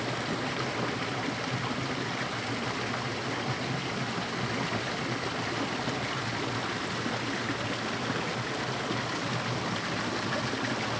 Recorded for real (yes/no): yes